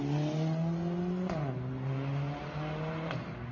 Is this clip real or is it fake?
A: real